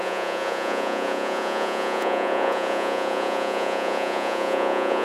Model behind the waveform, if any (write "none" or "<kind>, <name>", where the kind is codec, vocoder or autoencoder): vocoder, Vocos